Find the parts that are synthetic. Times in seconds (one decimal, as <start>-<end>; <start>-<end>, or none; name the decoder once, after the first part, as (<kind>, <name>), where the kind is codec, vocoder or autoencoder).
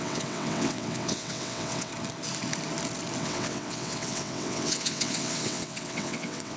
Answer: 0.0-1.9 (vocoder, WaveNeXt); 3.2-6.6